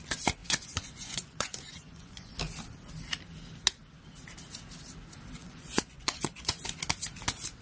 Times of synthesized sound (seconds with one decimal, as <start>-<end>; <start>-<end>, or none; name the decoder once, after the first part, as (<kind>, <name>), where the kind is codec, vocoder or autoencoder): 0.4-2.3 (vocoder, Vocos); 5.4-6.6